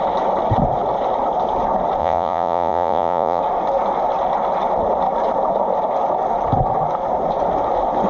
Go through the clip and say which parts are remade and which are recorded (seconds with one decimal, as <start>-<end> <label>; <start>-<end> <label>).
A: 0.0-2.0 recorded; 2.0-3.4 remade; 3.4-8.1 recorded